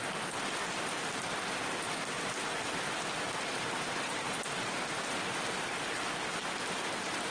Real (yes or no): yes